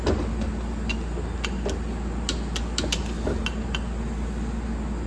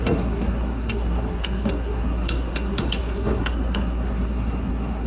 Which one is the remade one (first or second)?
second